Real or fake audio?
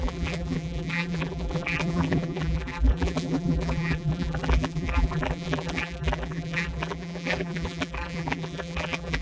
fake